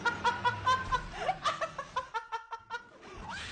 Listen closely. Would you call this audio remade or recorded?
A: recorded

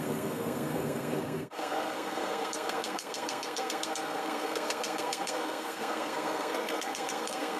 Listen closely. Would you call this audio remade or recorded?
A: remade